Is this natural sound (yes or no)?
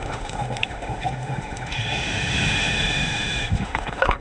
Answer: no